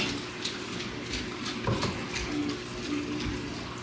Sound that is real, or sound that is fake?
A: real